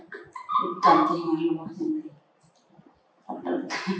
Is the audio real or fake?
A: real